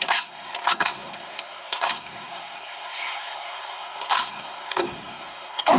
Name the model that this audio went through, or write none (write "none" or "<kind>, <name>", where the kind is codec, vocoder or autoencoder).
codec, SNAC